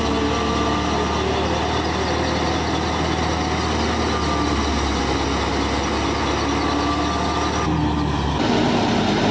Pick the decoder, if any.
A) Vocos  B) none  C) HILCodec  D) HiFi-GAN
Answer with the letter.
B